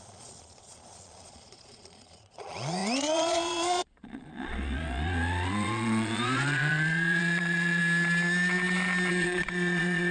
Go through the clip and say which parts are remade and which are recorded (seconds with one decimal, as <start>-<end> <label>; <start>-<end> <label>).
0.0-7.8 remade; 7.8-9.1 recorded; 9.1-10.1 remade